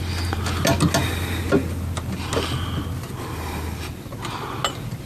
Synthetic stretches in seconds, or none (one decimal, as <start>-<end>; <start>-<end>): none